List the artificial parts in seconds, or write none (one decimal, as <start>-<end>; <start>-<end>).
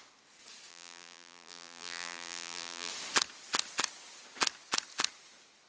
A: 0.7-2.9